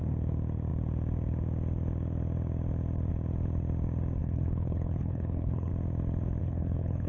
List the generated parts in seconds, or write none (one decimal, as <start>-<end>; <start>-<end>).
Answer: 4.2-5.7; 6.4-7.1